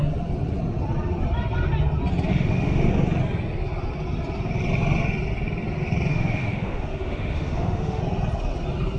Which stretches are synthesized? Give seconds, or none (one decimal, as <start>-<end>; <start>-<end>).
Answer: 2.3-2.9; 6.1-8.0